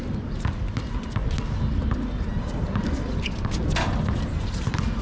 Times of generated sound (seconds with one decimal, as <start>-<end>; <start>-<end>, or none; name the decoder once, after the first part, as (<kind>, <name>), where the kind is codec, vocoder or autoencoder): none